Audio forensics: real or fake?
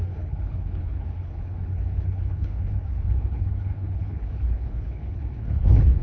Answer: fake